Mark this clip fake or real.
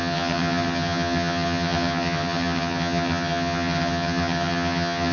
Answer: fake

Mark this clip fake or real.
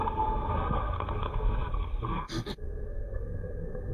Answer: fake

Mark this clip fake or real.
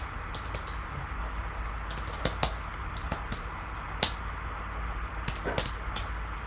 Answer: real